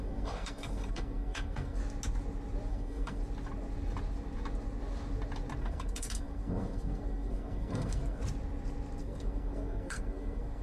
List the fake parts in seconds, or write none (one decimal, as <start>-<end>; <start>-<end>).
0.0-1.8; 2.7-3.2; 5.6-8.2; 9.0-10.6

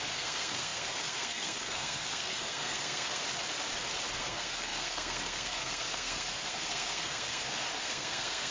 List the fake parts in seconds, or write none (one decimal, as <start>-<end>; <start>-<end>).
0.0-3.2; 4.2-8.5

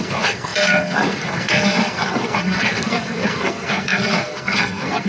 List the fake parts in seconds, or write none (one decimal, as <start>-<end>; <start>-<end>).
0.0-5.1

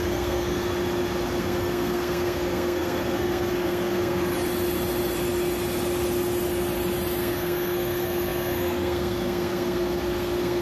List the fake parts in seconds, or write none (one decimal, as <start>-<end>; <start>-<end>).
0.0-0.7; 1.4-4.3; 7.2-10.6

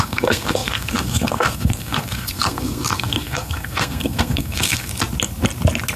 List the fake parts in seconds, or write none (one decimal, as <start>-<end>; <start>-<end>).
0.0-4.9

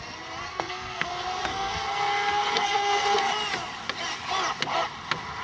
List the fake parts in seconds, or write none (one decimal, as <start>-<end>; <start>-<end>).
0.5-1.1; 1.5-3.3

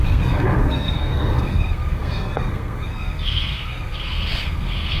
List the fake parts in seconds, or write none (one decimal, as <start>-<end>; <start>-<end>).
0.0-5.0

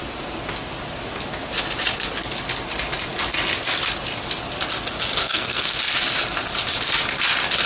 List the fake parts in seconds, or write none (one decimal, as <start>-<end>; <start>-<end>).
5.2-5.8